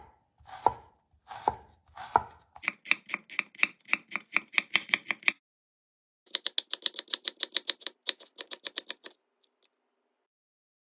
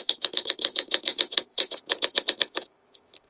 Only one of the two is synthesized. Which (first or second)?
second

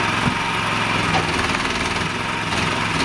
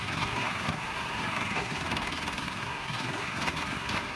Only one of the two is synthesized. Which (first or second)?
second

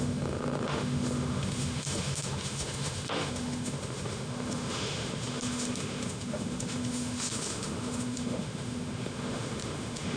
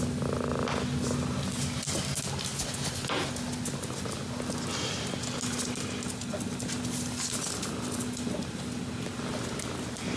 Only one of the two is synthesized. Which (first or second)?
first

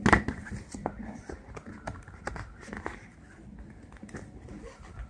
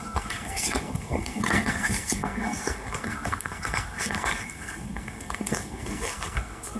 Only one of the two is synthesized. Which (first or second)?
second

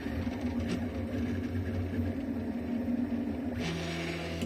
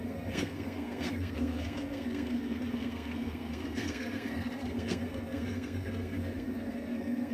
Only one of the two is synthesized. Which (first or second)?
second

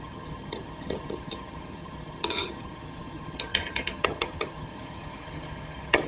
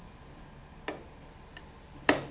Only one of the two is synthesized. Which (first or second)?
first